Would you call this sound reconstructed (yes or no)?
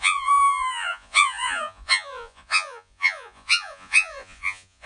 yes